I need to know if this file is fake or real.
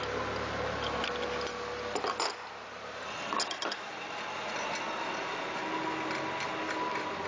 real